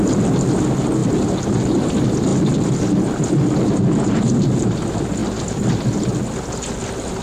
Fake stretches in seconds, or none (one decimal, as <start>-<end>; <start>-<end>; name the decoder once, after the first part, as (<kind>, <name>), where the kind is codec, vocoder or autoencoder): none